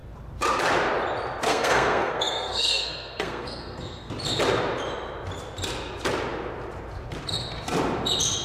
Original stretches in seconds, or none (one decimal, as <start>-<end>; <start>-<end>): 0.0-1.5; 4.1-8.4